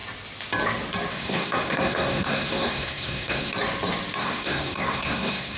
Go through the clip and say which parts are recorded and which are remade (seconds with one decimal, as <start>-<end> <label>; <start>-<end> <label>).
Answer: 0.0-1.1 recorded; 1.1-3.5 remade; 3.5-4.2 recorded; 4.2-5.6 remade